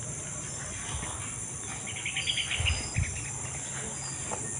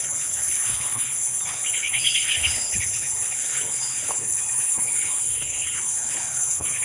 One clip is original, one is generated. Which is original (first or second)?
first